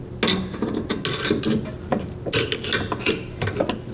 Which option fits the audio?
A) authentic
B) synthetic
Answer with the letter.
A